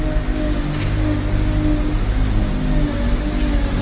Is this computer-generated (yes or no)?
no